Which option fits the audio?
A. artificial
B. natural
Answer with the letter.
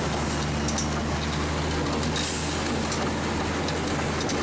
B